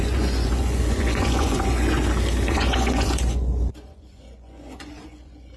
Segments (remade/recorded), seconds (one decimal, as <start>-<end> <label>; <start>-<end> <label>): 0.0-2.0 remade; 2.0-2.5 recorded; 2.5-5.6 remade